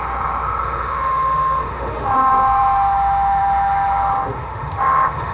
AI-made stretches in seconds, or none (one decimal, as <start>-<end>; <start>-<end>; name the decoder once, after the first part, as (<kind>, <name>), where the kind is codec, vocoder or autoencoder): 0.0-5.3 (autoencoder, DAC-VAE)